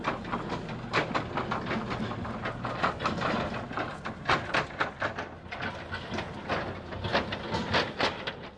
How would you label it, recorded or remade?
recorded